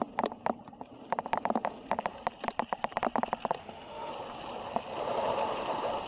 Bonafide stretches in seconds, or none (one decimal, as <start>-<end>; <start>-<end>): 0.0-3.6; 4.1-6.1